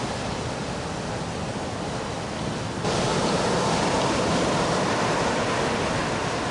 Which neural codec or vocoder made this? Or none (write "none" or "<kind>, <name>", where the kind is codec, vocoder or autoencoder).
none